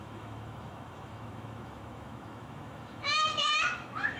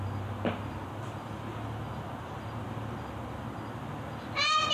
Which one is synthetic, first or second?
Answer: first